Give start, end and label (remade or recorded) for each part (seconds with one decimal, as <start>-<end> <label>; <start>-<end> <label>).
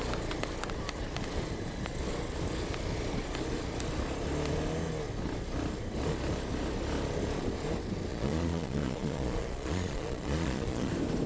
0.0-8.1 recorded; 8.1-10.9 remade; 10.9-11.3 recorded